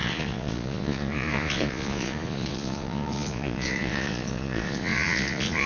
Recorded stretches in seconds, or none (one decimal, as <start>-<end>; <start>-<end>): none